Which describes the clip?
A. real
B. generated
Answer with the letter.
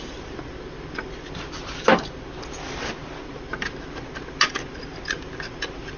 A